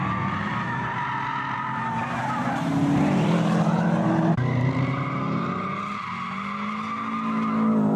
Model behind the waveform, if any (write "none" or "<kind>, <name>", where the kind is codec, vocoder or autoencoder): none